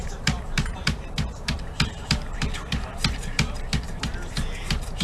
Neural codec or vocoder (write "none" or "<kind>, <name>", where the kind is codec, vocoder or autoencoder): vocoder, BigVGAN v2